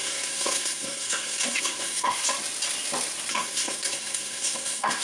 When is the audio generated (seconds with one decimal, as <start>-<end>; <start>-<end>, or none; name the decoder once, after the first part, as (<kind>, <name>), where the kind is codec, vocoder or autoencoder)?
0.0-2.2 (codec, SNAC); 3.3-5.0